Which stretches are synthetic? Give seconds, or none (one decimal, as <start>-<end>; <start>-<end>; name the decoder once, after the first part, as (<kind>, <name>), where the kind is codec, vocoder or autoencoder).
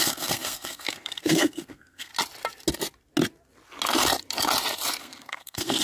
0.0-2.1 (codec, SNAC); 5.0-5.8